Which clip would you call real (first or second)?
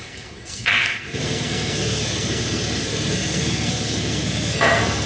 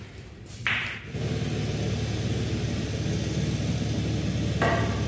second